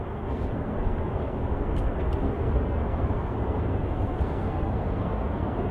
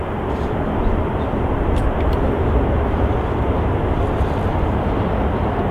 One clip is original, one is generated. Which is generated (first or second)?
first